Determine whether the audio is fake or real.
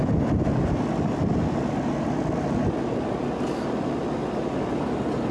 real